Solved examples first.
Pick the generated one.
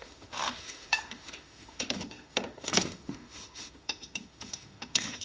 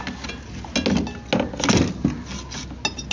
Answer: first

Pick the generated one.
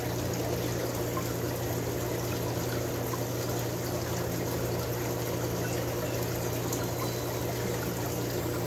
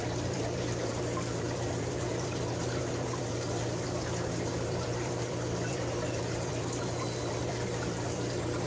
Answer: second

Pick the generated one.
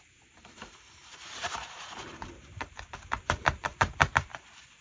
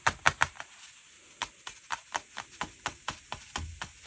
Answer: first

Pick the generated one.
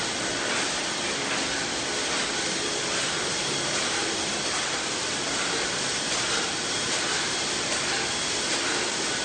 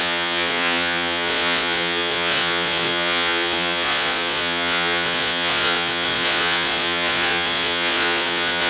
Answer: second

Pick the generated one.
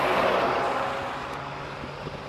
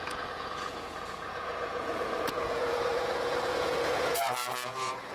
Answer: second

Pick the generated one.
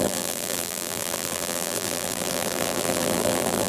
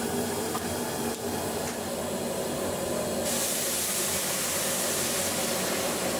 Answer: first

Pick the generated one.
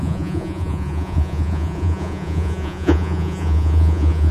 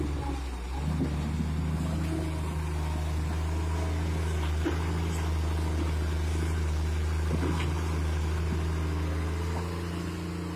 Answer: first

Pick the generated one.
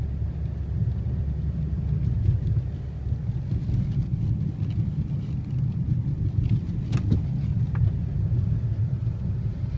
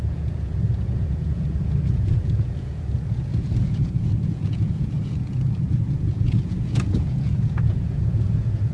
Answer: second